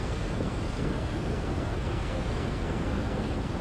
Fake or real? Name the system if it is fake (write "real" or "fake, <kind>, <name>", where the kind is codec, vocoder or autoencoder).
fake, codec, SNAC